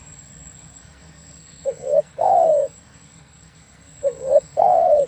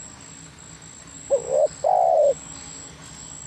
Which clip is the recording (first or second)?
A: second